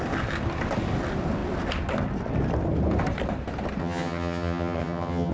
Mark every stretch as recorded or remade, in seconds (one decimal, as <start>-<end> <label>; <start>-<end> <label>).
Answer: 0.0-3.8 recorded; 3.8-5.3 remade